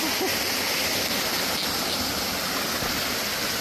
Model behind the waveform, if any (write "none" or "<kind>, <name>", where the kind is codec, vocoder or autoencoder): none